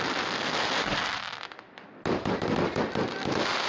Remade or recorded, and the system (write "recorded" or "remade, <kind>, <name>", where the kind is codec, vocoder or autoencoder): recorded